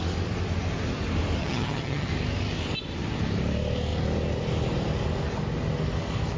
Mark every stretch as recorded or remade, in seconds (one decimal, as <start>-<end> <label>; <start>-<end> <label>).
0.0-1.4 recorded; 1.4-2.1 remade; 2.1-6.4 recorded